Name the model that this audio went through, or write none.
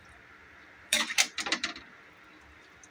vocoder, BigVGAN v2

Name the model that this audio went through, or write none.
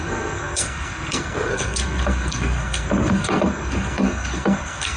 codec, SNAC